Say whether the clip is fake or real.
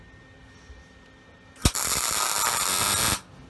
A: real